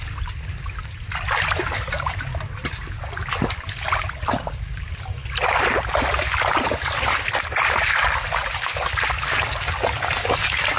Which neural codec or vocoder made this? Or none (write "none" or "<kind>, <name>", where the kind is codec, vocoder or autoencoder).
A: none